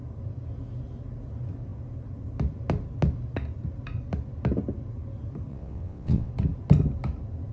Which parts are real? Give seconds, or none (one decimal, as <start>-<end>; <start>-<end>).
0.0-5.5; 6.3-7.5